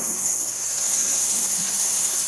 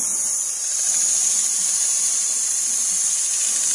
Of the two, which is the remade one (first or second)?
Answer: first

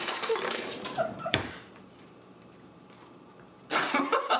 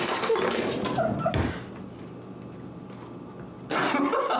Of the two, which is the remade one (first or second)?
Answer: first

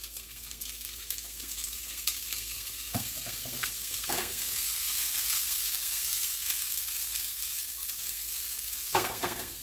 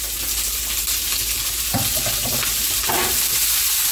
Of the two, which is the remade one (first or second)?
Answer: first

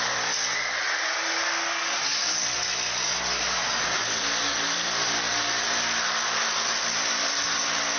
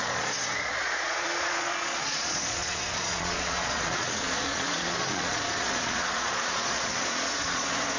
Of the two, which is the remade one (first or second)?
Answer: second